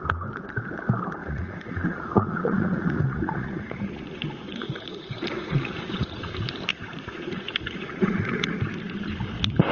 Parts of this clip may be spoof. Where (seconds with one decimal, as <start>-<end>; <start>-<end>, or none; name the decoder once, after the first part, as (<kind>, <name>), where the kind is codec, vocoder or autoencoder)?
1.2-6.3 (vocoder, Vocos); 6.7-8.6

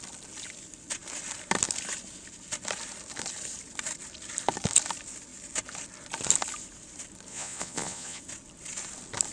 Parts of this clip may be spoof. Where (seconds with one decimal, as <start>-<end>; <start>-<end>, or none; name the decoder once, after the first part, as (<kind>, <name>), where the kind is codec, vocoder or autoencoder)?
7.3-8.2 (vocoder, Vocos)